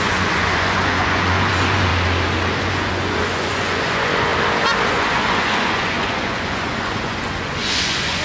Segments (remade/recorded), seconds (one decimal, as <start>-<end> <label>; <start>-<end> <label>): 0.0-1.9 remade; 1.9-2.6 recorded; 2.6-4.3 remade; 4.3-4.9 recorded; 4.9-8.2 remade